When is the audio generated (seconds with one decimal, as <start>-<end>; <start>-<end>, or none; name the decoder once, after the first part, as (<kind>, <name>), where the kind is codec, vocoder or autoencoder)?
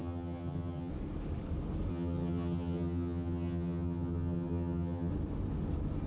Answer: 0.0-0.9 (vocoder, HiFi-GAN); 1.9-5.1